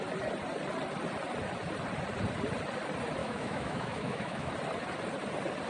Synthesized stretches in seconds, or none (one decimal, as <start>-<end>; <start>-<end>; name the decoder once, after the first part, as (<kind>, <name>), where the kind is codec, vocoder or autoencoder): 3.2-4.5 (autoencoder, DAC-VAE)